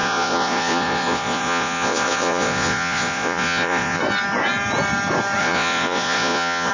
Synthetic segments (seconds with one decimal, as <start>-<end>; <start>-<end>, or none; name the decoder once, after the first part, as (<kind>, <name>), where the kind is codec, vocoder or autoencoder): 0.0-4.0 (vocoder, Vocos); 5.4-6.7